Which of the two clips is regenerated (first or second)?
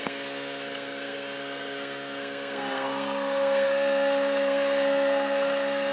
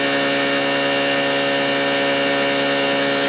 first